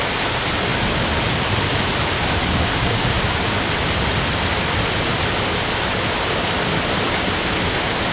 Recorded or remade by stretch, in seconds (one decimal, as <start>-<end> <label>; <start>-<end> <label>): 0.0-2.4 recorded; 2.4-3.2 remade; 3.2-8.1 recorded